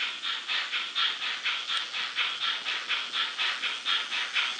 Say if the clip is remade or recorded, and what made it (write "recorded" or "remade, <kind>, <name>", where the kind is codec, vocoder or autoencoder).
recorded